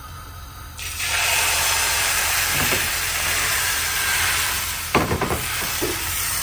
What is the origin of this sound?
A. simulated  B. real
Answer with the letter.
A